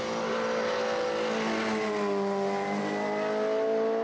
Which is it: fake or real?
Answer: real